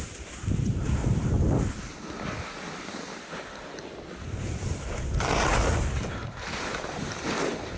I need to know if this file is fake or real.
real